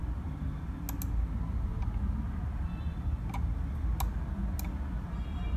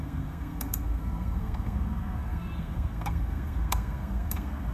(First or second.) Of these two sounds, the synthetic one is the second